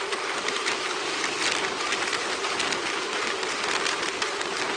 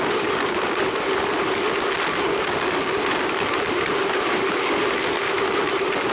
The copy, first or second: second